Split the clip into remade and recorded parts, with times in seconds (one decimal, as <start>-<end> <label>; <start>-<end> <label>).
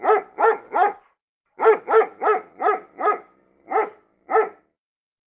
0.0-5.3 recorded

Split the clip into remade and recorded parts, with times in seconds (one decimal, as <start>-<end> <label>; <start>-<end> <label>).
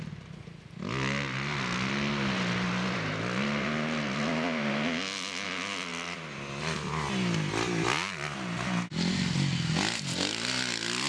0.0-11.1 recorded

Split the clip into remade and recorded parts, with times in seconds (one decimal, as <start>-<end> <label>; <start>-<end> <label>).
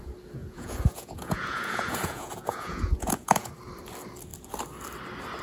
0.0-0.4 recorded; 0.4-3.5 remade; 3.5-5.4 recorded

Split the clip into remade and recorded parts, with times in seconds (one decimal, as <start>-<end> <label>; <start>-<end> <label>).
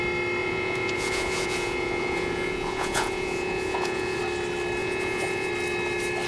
0.0-0.4 recorded; 0.4-4.2 remade; 4.2-4.8 recorded; 4.8-5.5 remade; 5.5-6.3 recorded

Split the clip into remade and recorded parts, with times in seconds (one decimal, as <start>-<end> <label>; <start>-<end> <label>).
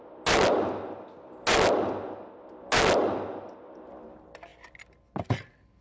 0.0-5.8 recorded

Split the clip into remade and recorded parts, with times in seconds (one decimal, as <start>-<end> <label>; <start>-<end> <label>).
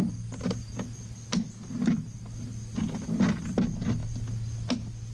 0.0-5.1 recorded